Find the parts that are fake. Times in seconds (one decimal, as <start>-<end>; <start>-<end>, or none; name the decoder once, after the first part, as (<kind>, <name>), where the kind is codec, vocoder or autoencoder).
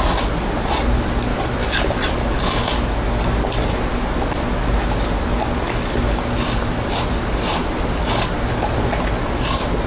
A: 1.3-2.0 (vocoder, BigVGAN v2)